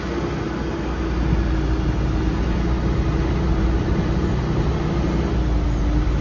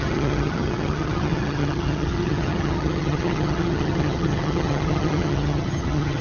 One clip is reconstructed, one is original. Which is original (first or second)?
first